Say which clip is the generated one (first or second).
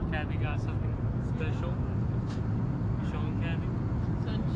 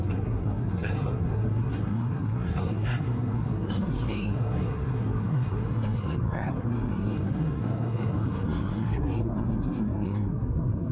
second